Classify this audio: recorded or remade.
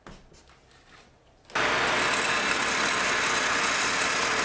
recorded